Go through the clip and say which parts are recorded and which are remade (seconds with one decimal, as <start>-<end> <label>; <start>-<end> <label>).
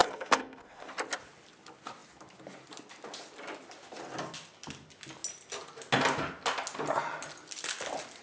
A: 0.0-0.9 remade; 0.9-8.2 recorded